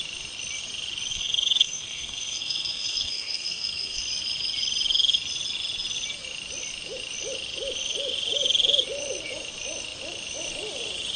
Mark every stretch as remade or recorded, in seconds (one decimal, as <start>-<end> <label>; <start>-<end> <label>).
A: 0.0-1.1 recorded; 1.1-4.0 remade; 4.0-11.2 recorded